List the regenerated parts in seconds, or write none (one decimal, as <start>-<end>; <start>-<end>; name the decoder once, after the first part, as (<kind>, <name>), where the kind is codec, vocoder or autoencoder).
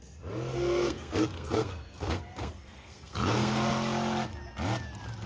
0.5-3.7 (codec, SNAC)